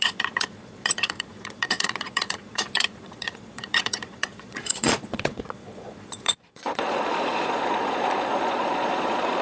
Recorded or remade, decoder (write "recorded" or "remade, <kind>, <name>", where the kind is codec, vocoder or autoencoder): remade, vocoder, Vocos